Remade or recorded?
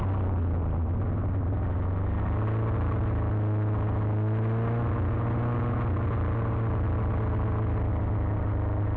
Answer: recorded